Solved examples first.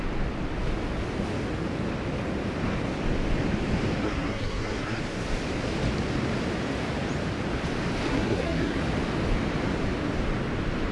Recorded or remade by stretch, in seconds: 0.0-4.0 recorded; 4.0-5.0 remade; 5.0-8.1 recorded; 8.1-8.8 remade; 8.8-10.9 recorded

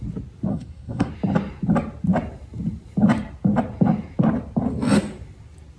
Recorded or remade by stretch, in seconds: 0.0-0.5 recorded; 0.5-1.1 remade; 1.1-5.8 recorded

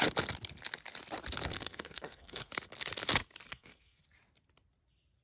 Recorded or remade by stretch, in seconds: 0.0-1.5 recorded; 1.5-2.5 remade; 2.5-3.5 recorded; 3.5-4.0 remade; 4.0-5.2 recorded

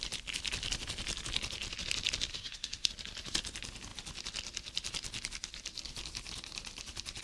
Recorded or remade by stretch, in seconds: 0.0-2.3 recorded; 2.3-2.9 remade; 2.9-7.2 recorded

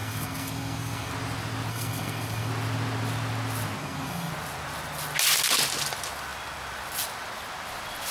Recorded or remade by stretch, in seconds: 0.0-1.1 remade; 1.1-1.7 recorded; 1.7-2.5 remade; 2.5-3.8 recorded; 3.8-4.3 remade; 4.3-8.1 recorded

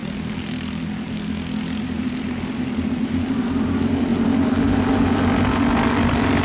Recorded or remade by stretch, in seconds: 0.0-6.4 recorded